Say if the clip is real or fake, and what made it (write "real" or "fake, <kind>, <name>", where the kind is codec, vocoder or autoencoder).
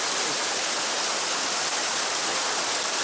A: real